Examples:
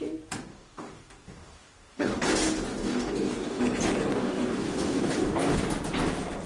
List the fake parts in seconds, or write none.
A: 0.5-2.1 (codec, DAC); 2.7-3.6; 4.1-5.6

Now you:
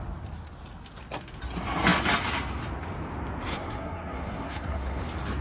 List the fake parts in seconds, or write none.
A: 3.5-5.0 (codec, SNAC)

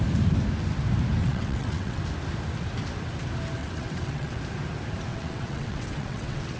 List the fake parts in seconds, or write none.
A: 1.2-2.0 (vocoder, WaveNeXt); 3.6-4.4; 5.1-6.6